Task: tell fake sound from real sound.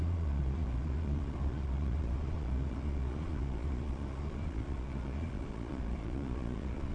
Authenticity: fake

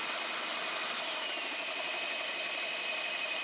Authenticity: real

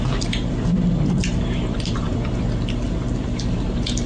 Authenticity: fake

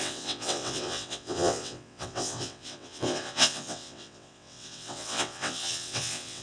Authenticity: fake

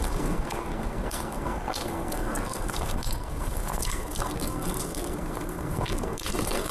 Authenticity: fake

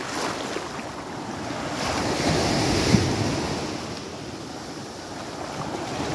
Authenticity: real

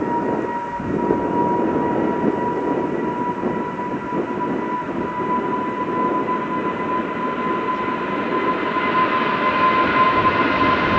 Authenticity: real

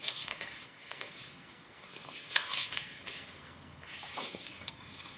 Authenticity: fake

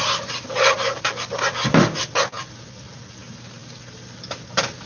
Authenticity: real